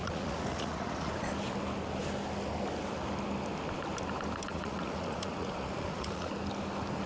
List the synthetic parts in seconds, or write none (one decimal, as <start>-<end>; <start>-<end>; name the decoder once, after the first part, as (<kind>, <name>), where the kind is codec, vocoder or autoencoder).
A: 0.0-1.1 (vocoder, Vocos); 4.5-6.3